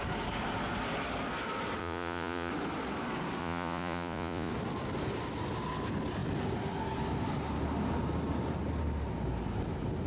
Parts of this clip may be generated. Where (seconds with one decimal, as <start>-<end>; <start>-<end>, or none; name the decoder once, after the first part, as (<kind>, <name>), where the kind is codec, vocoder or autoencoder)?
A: 1.8-2.5 (vocoder, Vocos); 3.4-4.5

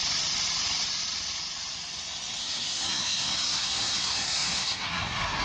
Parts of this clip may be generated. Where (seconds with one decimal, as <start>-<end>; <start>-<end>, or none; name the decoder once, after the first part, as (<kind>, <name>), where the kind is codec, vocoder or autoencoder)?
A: 2.4-5.4 (codec, SNAC)

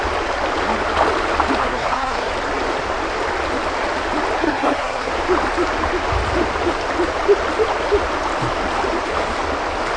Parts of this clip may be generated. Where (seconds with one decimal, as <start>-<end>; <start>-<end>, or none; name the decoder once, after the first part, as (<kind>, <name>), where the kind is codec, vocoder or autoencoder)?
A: 1.6-2.3 (codec, SNAC); 4.4-5.1

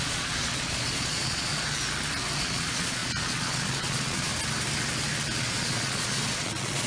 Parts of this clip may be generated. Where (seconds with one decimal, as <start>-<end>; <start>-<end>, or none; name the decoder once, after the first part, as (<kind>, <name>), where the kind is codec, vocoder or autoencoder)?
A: 0.0-1.5 (vocoder, Vocos); 2.4-4.3; 5.4-6.9

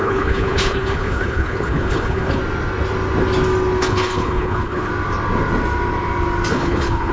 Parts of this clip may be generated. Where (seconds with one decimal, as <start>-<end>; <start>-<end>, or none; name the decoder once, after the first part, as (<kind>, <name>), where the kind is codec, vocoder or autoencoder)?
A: 0.0-2.4 (codec, HILCodec); 3.8-4.9; 6.5-7.1

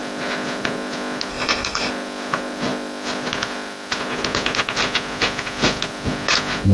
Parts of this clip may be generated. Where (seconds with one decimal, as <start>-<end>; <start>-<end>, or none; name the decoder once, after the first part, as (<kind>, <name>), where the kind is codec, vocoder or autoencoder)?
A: 1.3-1.9 (codec, DAC)